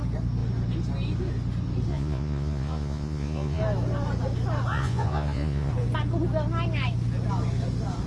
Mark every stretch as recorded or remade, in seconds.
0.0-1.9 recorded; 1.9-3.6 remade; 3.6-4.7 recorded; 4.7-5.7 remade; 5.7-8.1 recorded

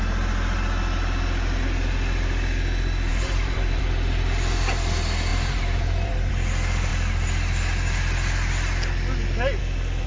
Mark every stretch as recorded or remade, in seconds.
0.0-3.1 recorded; 3.1-3.8 remade; 3.8-5.3 recorded; 5.3-6.3 remade; 6.3-10.1 recorded